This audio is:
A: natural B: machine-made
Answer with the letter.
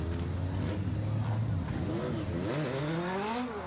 A